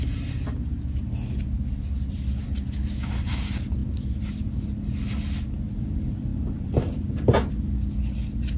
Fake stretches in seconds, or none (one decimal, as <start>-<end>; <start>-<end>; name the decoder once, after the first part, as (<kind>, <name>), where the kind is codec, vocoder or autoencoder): 2.4-2.9 (vocoder, BigVGAN v2); 6.3-7.5